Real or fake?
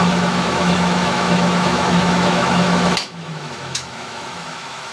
fake